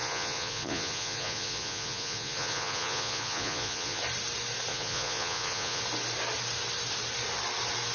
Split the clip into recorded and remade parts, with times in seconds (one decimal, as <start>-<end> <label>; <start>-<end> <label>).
0.0-4.0 remade; 4.0-4.7 recorded; 4.7-5.8 remade; 5.8-7.9 recorded